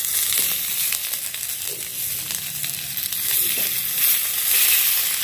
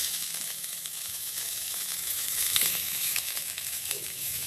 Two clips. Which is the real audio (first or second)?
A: first